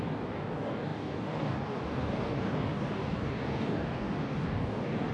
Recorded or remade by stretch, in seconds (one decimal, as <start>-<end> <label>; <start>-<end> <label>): 0.0-5.1 remade